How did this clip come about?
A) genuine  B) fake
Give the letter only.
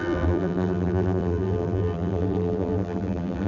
B